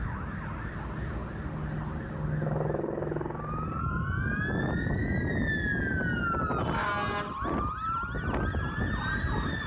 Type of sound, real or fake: real